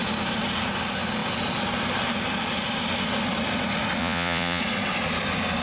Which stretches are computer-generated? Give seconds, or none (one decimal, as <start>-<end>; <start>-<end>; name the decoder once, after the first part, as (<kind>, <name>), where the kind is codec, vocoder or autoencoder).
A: 4.0-4.6 (vocoder, Vocos)